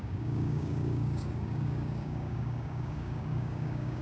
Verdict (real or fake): fake